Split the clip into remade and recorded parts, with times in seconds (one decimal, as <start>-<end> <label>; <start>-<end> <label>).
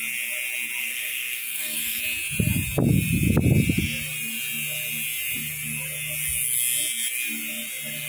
0.0-0.8 recorded; 0.8-2.0 remade; 2.0-8.1 recorded